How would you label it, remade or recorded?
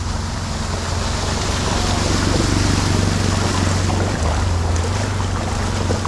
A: recorded